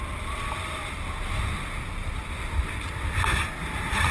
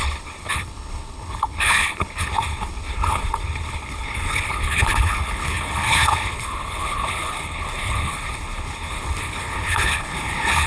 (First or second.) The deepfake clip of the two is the second